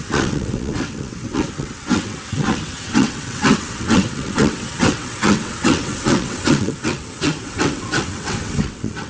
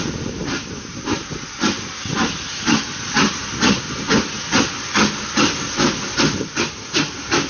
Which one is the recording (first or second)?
second